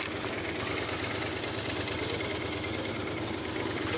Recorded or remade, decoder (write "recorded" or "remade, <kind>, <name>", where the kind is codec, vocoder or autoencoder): recorded